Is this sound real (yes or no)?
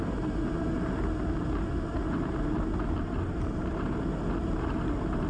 yes